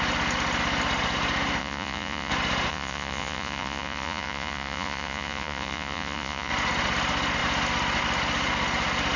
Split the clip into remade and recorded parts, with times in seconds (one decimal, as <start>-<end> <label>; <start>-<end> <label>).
0.0-1.6 recorded; 1.6-2.3 remade; 2.3-2.7 recorded; 2.7-6.5 remade; 6.5-9.2 recorded